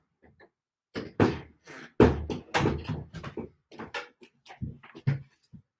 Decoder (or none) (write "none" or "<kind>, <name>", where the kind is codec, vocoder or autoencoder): none